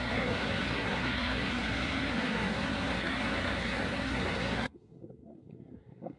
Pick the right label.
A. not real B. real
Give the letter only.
A